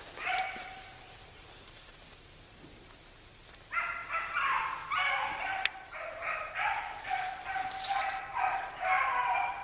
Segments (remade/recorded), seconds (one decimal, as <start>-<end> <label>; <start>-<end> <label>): 0.0-9.6 recorded